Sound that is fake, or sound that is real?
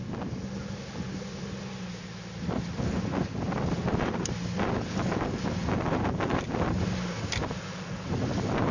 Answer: real